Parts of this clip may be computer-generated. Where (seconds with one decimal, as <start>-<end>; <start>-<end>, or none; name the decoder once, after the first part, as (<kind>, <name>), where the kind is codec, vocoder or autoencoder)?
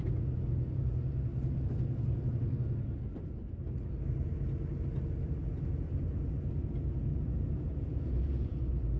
0.0-1.3 (vocoder, Vocos); 5.6-9.0